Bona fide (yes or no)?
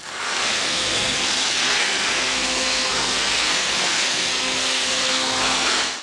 no